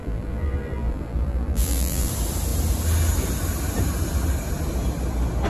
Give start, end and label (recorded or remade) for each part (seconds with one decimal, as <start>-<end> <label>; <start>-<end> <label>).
0.0-2.1 remade; 2.1-5.5 recorded